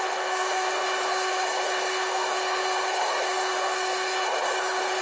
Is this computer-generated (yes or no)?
yes